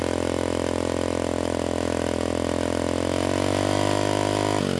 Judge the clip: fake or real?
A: real